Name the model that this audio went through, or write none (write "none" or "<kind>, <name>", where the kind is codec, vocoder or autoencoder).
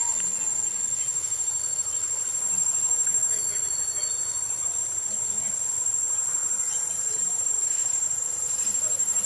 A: none